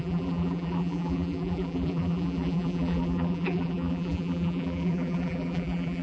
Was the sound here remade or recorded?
remade